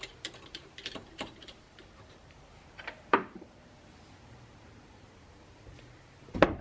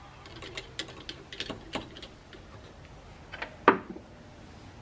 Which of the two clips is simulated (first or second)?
first